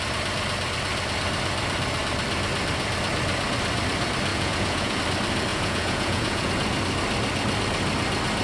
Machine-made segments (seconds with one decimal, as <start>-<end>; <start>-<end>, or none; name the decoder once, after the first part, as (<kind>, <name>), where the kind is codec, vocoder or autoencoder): 4.3-5.0 (vocoder, Vocos); 5.5-6.5